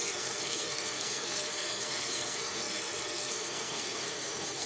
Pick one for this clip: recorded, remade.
remade